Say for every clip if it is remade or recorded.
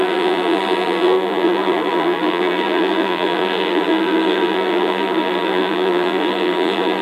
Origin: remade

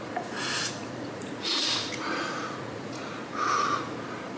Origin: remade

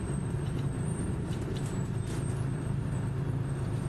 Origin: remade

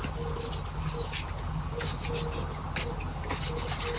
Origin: recorded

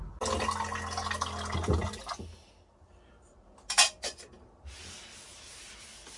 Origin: recorded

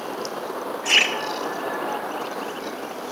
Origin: recorded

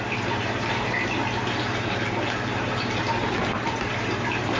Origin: remade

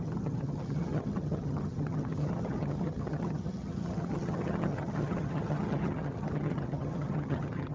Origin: remade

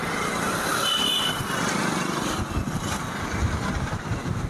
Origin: recorded